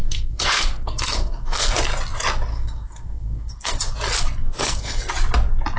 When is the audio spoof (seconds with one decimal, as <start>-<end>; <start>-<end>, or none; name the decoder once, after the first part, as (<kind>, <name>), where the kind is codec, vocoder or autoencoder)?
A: 0.0-1.7 (codec, SNAC); 2.5-3.8; 4.4-5.0